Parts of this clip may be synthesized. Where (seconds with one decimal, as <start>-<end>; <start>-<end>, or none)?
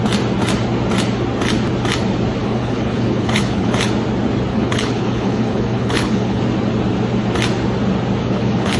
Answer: 2.4-3.9; 4.5-6.4; 8.2-8.8